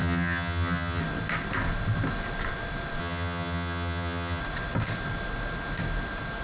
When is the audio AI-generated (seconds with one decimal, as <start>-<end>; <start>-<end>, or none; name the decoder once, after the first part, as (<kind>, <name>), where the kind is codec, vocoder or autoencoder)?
0.0-1.0 (vocoder, HiFi-GAN); 3.0-4.4

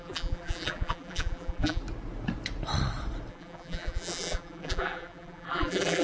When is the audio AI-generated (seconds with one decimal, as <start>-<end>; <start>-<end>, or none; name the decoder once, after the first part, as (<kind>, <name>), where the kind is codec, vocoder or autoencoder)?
0.0-1.8 (vocoder, BigVGAN v2); 3.3-6.0

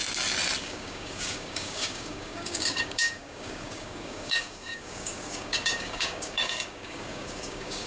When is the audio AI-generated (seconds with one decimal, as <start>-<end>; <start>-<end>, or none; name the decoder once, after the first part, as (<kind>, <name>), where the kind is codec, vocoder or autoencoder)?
0.6-7.9 (codec, DAC)

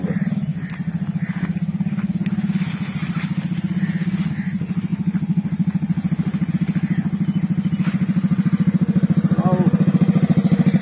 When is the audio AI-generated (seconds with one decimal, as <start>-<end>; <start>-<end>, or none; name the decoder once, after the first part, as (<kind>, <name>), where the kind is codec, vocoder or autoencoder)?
none